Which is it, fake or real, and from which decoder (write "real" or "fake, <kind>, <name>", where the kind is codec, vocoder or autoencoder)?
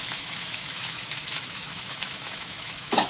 fake, autoencoder, DAC-VAE